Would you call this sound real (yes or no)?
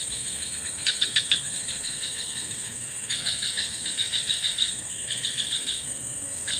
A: no